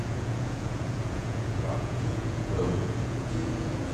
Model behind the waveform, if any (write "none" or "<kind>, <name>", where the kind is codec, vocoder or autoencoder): vocoder, Vocos